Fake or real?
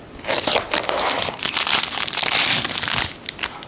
real